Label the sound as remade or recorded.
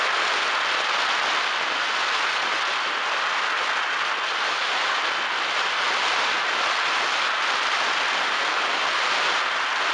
recorded